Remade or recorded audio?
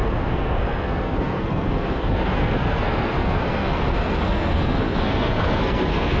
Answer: remade